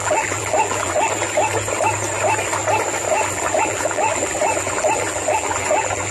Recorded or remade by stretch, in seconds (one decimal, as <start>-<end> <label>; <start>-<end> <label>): 0.0-1.1 remade; 1.1-3.1 recorded; 3.1-6.1 remade